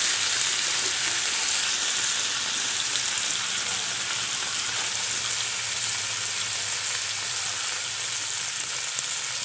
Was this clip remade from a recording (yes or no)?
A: no